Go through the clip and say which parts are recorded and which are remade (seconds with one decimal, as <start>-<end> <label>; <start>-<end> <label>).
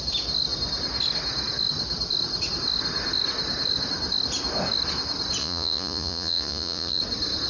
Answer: 0.0-5.4 recorded; 5.4-7.0 remade; 7.0-7.5 recorded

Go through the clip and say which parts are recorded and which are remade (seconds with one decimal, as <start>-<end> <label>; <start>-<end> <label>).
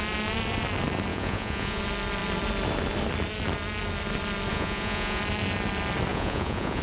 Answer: 0.0-1.1 recorded; 1.1-1.8 remade; 1.8-4.5 recorded; 4.5-5.2 remade; 5.2-6.1 recorded; 6.1-6.8 remade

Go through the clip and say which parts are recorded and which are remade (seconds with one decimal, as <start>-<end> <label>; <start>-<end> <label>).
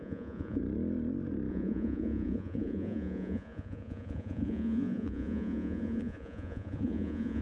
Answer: 0.0-0.6 remade; 0.6-1.5 recorded; 1.5-7.4 remade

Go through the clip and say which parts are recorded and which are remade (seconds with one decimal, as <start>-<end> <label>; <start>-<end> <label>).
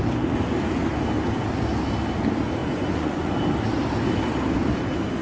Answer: 0.0-2.6 recorded; 2.6-3.3 remade; 3.3-5.2 recorded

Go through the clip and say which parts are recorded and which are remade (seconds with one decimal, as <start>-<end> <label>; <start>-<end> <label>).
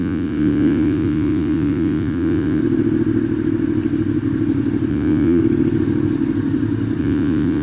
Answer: 0.0-2.6 remade; 2.6-4.9 recorded; 4.9-5.4 remade; 5.4-7.0 recorded; 7.0-7.6 remade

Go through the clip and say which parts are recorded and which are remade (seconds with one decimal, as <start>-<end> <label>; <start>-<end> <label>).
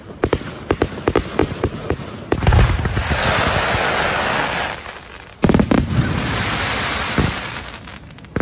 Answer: 0.0-1.4 recorded; 1.4-2.0 remade; 2.0-8.4 recorded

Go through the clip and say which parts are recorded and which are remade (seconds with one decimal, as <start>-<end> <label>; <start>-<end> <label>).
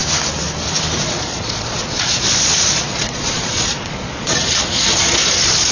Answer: 0.0-1.0 recorded; 1.0-5.7 remade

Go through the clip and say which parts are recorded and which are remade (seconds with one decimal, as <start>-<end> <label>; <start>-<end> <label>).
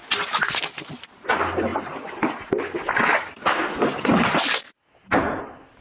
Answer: 0.0-5.8 recorded